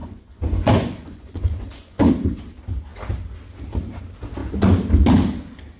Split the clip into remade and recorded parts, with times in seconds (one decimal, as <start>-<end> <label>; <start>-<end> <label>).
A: 0.0-2.1 remade; 2.1-5.8 recorded